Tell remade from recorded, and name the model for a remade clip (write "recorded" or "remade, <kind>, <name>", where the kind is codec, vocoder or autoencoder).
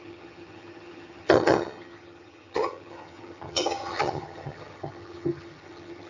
remade, vocoder, HiFi-GAN